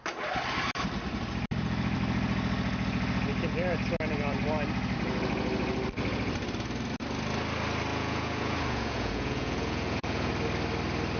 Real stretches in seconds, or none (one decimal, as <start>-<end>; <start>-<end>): 0.0-7.9; 10.3-11.2